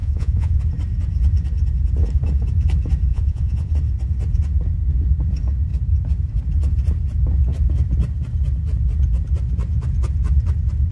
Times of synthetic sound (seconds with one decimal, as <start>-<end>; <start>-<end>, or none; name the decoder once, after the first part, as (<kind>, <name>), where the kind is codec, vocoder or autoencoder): 0.0-0.6 (vocoder, Vocos); 3.1-3.7